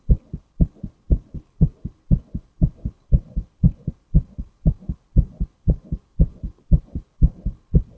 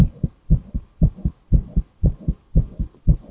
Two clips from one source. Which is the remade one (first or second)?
first